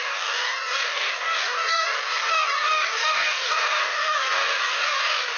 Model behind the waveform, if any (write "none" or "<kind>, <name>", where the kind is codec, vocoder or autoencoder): codec, DAC